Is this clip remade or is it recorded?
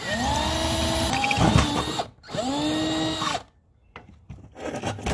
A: recorded